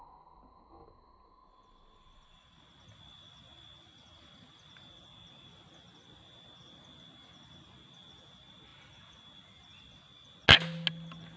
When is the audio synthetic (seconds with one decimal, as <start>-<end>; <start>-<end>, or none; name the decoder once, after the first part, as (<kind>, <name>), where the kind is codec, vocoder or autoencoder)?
none